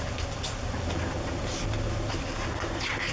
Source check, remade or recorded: recorded